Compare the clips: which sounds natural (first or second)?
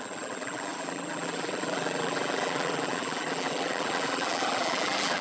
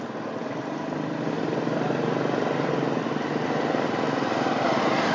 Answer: second